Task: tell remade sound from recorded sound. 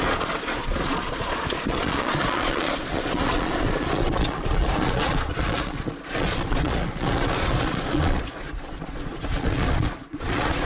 remade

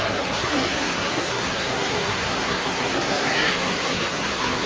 remade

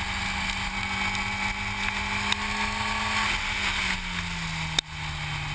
recorded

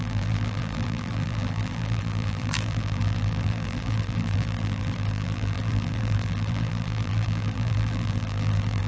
remade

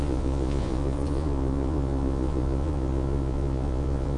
remade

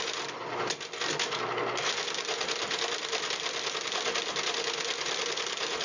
recorded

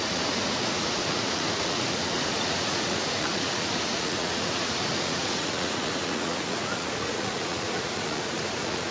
remade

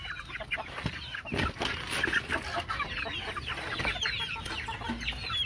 recorded